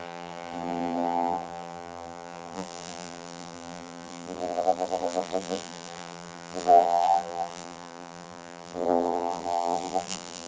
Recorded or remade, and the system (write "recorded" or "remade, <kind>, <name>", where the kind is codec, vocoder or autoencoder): remade, vocoder, BigVGAN v2